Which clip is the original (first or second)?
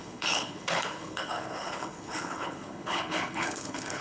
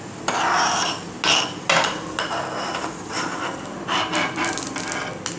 second